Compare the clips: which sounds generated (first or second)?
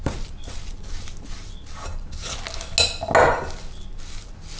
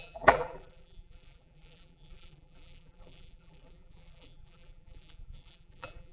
second